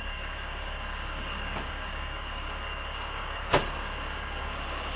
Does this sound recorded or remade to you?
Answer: remade